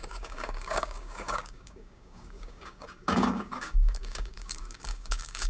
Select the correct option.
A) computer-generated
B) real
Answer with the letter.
A